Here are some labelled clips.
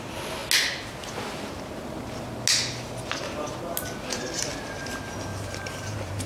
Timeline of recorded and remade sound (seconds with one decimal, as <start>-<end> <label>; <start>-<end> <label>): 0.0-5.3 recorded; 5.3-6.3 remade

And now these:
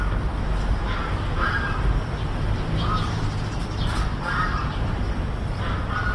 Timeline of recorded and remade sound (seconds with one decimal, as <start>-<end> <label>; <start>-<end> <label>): 0.0-1.3 recorded; 1.3-5.0 remade; 5.0-6.1 recorded

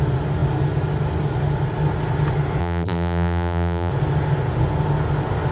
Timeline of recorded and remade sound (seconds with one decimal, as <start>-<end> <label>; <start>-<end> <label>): 0.0-2.6 recorded; 2.6-3.9 remade; 3.9-5.5 recorded

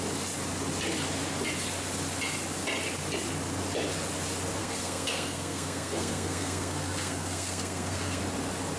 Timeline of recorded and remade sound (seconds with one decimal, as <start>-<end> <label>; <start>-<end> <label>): 0.0-4.6 recorded; 4.6-8.2 remade; 8.2-8.8 recorded

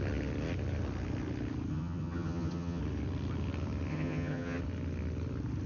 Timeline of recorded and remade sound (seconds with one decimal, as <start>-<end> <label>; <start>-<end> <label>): 0.0-1.7 recorded; 1.7-2.8 remade; 2.8-3.9 recorded; 3.9-4.6 remade; 4.6-5.7 recorded